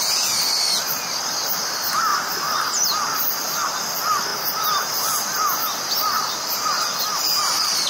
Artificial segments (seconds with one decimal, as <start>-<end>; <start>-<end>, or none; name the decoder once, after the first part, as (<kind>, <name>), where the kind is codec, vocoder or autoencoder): none